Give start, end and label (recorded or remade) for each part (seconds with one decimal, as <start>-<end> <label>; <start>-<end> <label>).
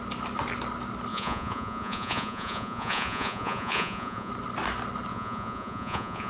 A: 0.0-1.1 recorded; 1.1-4.3 remade; 4.3-5.1 recorded; 5.1-6.3 remade